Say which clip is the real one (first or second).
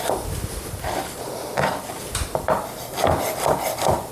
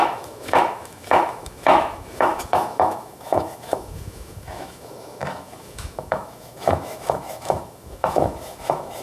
first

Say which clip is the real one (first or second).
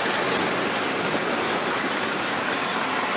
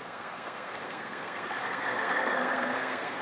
first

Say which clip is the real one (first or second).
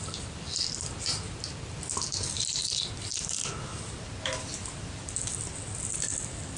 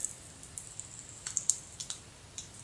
first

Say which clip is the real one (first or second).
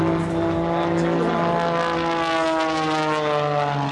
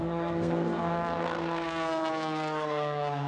first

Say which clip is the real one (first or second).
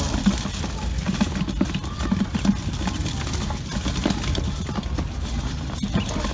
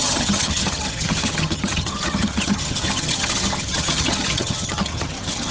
first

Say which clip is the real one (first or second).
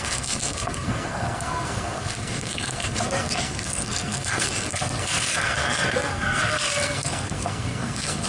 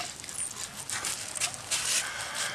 second